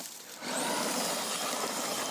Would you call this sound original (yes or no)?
no